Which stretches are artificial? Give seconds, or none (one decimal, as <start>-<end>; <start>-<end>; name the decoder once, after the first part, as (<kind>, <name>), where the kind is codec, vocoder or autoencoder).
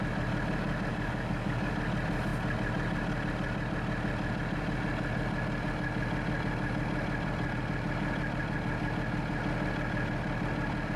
0.9-1.7 (codec, DAC)